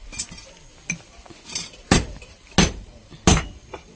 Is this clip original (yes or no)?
yes